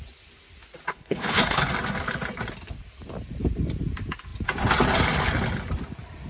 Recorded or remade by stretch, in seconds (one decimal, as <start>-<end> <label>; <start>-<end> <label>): 0.0-0.9 recorded; 0.9-1.7 remade; 1.7-6.3 recorded